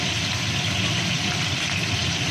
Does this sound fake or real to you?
real